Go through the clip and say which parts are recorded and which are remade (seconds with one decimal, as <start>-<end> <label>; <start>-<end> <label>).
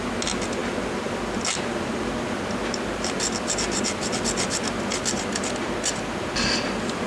0.0-7.1 recorded